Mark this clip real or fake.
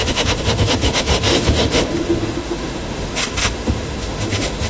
fake